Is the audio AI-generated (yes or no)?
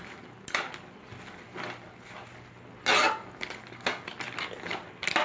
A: no